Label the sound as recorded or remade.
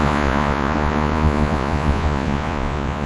remade